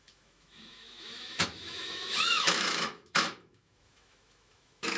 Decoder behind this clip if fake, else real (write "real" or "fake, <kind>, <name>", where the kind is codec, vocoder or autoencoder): fake, autoencoder, DAC-VAE